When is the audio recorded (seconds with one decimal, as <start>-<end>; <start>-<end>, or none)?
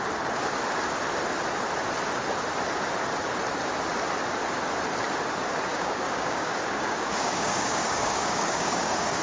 0.0-5.7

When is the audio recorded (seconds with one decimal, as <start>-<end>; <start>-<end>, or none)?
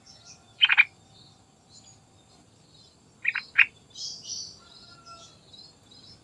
0.0-6.2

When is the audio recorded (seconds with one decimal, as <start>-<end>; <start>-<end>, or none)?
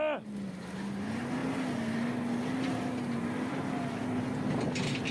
0.0-5.1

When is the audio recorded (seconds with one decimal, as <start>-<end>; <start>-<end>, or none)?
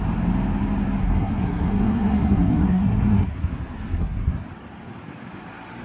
0.0-1.0; 4.5-5.8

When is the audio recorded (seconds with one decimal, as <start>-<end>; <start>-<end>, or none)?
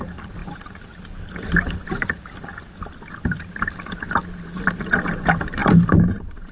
2.5-5.0